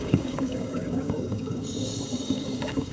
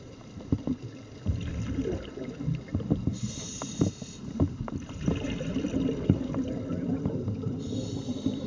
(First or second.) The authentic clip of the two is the second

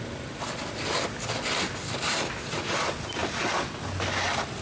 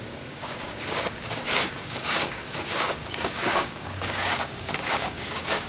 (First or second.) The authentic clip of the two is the first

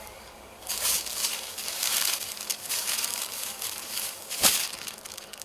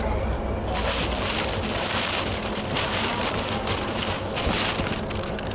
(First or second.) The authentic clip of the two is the second